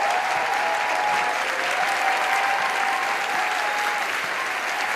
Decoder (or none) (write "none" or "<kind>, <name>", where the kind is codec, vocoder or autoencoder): none